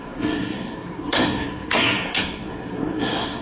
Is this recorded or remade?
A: remade